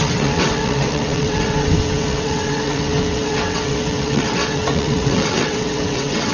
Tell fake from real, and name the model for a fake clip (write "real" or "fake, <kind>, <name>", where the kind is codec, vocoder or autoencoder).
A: fake, vocoder, WaveNeXt